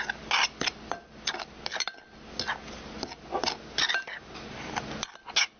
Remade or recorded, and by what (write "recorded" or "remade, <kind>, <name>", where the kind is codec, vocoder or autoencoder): recorded